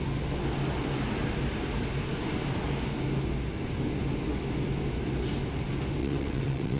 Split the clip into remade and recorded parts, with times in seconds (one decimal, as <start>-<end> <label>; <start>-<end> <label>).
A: 0.0-6.0 recorded; 6.0-6.8 remade